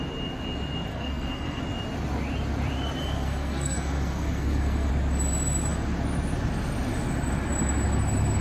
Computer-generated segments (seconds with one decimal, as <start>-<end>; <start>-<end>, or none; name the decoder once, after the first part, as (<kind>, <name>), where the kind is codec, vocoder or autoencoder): 0.9-1.6 (codec, SNAC); 3.0-4.9